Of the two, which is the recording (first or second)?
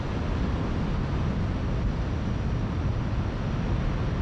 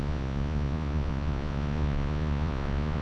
first